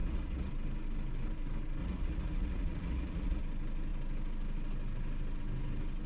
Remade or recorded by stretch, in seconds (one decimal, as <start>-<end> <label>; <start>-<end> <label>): 0.0-0.5 remade; 0.5-1.8 recorded; 1.8-3.4 remade; 3.4-6.1 recorded